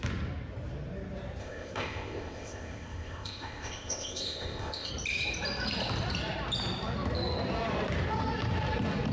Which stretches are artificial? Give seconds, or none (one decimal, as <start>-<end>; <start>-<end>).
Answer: 1.4-4.9